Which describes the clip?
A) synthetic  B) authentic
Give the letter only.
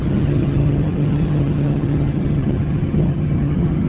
A